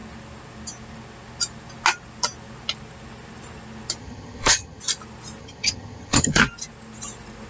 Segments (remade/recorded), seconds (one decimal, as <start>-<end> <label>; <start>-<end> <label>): 0.0-4.0 recorded; 4.0-4.8 remade; 4.8-5.4 recorded; 5.4-6.4 remade; 6.4-7.5 recorded